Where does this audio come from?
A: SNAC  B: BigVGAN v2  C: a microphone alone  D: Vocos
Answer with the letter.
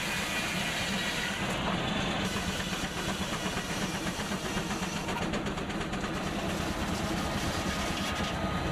C